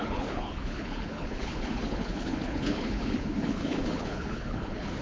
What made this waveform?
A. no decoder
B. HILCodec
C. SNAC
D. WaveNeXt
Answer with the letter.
B